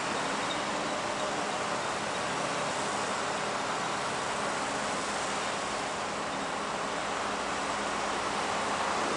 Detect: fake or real real